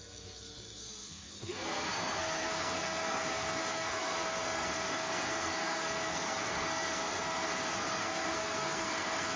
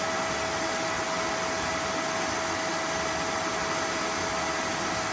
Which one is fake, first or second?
first